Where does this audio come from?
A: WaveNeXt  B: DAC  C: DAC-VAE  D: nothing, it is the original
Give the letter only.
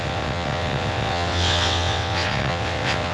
A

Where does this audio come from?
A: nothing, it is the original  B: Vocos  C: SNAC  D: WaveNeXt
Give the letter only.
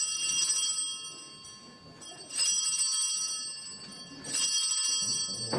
A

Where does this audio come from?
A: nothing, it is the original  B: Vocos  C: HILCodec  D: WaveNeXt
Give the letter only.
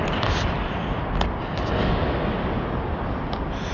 A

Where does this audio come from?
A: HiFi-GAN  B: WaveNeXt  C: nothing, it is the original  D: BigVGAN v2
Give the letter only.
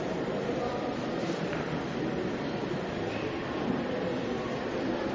C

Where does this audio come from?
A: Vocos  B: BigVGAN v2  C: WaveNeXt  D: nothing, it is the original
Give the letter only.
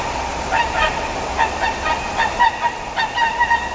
D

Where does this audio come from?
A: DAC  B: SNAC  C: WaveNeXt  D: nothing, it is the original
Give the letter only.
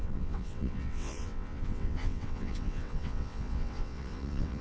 C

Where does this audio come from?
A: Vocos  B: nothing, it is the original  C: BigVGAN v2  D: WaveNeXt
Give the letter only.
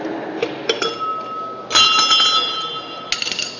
B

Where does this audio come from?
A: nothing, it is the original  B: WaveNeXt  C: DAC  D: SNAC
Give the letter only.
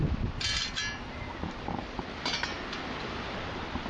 A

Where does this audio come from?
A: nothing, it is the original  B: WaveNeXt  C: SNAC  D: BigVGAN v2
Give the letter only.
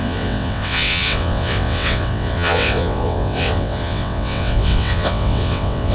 B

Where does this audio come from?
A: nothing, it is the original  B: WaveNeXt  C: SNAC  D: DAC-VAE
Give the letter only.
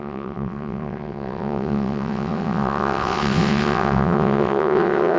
B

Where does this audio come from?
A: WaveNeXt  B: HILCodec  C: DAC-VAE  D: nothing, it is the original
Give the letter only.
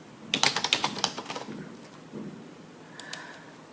D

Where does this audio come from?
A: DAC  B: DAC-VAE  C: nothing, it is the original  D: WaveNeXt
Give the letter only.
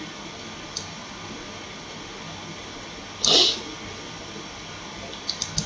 C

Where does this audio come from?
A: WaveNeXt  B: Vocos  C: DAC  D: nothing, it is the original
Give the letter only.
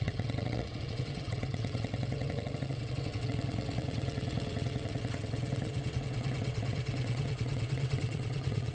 A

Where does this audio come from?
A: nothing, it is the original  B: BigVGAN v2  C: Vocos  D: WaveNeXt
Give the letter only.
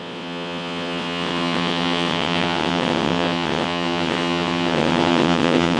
D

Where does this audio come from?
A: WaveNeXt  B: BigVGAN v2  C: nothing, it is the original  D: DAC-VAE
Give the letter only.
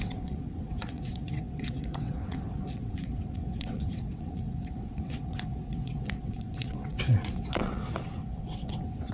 A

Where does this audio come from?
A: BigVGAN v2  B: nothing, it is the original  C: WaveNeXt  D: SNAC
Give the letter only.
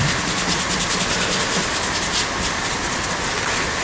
B